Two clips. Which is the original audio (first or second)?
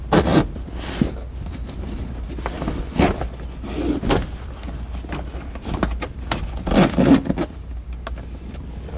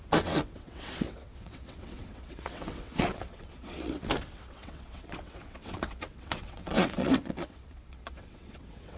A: first